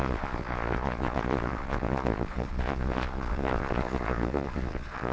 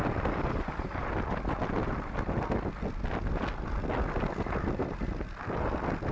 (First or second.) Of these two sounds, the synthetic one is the first